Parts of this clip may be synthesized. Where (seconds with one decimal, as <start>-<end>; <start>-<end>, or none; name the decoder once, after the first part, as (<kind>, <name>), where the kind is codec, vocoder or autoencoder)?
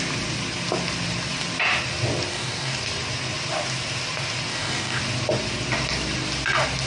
2.3-2.8 (codec, DAC); 4.5-5.0